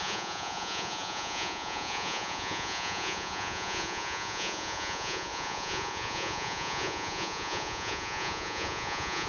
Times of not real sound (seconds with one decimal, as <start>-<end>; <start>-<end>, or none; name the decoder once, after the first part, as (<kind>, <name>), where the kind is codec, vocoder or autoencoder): 0.0-9.3 (vocoder, Vocos)